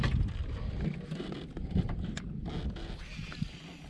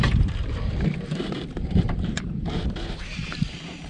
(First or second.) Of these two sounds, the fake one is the second